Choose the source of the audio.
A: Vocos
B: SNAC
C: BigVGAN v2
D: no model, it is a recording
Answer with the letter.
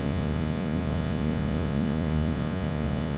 A